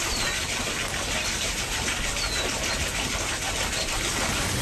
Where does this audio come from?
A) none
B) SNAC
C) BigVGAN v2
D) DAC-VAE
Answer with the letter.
A